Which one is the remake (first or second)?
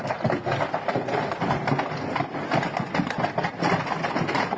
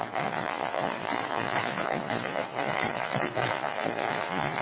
second